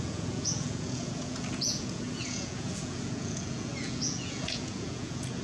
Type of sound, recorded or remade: remade